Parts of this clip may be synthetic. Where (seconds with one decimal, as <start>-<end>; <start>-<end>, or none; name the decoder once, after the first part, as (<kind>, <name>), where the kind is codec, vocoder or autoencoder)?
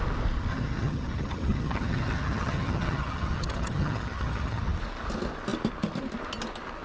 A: 0.5-4.6 (vocoder, HiFi-GAN)